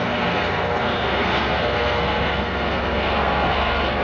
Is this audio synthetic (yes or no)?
yes